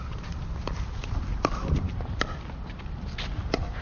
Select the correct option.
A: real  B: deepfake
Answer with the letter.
A